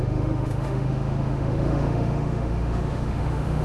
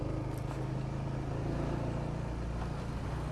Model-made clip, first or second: first